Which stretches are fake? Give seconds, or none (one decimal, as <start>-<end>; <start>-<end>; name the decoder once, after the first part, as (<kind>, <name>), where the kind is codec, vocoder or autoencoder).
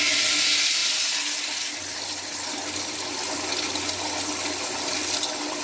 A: none